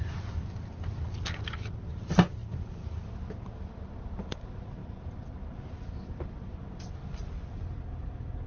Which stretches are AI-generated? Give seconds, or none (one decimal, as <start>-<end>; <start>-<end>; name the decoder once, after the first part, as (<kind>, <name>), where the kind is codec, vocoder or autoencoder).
none